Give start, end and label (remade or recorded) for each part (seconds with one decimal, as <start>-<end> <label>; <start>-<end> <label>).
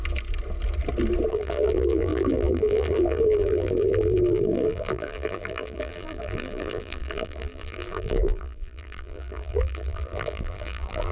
0.0-1.3 recorded; 1.3-11.1 remade